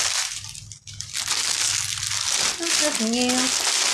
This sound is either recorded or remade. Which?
recorded